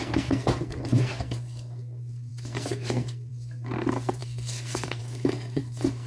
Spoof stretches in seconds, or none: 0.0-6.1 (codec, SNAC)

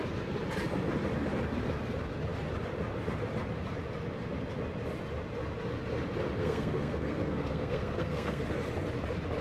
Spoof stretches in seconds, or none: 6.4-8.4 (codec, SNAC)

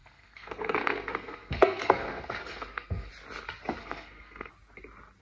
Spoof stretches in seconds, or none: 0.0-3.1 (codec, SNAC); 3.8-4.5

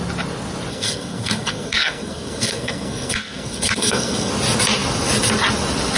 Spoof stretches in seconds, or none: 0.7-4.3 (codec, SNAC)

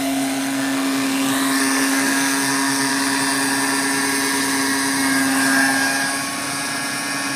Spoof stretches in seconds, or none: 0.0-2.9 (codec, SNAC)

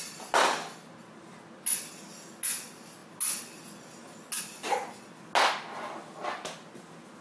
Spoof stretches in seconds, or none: none

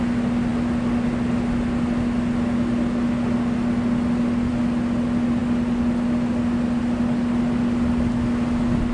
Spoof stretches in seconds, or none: none

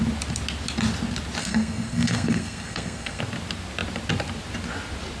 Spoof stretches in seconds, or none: 1.4-3.2 (codec, SNAC)